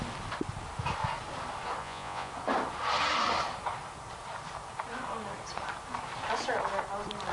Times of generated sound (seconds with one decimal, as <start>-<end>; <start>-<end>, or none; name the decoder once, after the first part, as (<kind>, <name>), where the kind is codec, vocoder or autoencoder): 1.8-2.3 (vocoder, Vocos)